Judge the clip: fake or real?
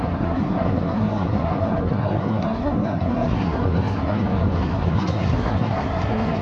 fake